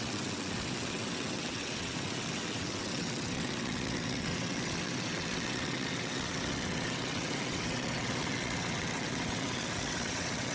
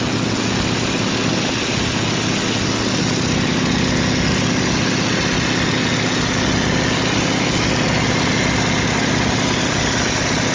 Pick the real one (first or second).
second